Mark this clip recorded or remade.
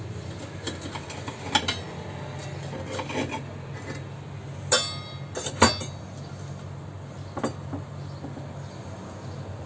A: recorded